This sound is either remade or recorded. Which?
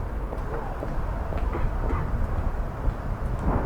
remade